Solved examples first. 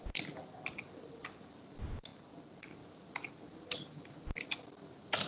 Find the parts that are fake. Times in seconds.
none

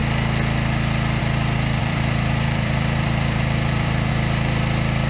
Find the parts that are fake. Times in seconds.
1.8-4.1 (vocoder, BigVGAN v2)

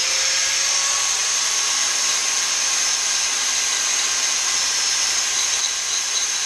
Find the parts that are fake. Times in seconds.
0.0-2.2 (vocoder, BigVGAN v2); 4.8-6.5

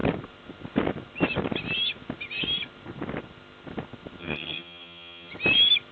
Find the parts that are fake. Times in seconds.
4.2-5.3 (vocoder, HiFi-GAN)

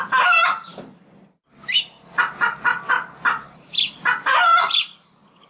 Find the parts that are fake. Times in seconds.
none

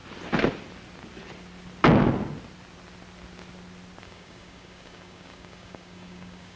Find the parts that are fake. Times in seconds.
4.0-6.6 (codec, DAC)

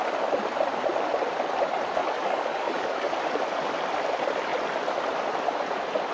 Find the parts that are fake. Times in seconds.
2.0-3.1 (codec, DAC)

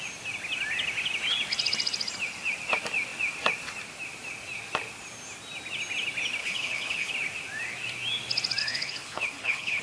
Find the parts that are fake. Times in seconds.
6.4-7.1 (codec, HILCodec); 8.6-9.8